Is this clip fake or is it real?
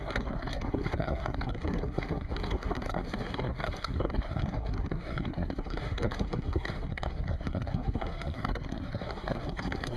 fake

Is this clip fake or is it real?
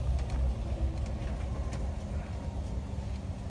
real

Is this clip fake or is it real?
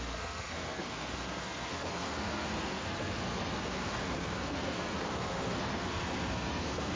fake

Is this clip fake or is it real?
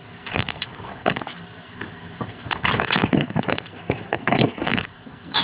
fake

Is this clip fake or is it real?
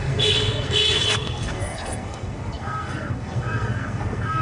fake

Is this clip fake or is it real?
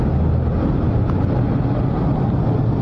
real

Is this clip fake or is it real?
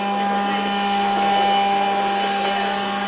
real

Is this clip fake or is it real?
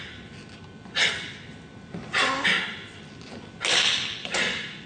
real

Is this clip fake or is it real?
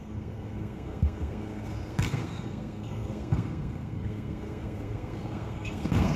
fake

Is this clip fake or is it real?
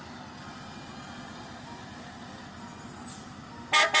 real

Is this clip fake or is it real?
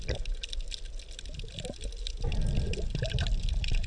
real